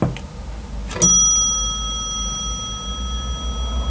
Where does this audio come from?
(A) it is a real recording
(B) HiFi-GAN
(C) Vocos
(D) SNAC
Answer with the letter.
A